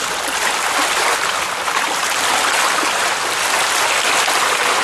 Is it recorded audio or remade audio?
recorded